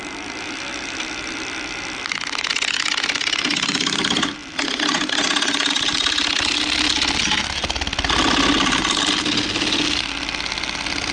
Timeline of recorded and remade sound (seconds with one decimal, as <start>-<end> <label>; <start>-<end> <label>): 0.0-11.1 recorded